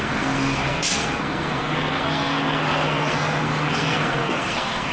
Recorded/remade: remade